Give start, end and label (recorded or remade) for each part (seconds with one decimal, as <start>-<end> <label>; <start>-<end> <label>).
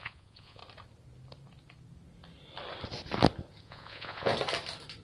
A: 0.0-0.6 remade; 0.6-3.6 recorded; 3.6-4.3 remade; 4.3-5.0 recorded